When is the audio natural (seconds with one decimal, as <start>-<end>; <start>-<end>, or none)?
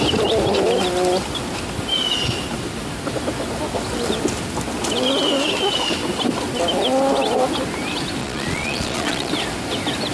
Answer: 0.0-8.2; 9.3-10.1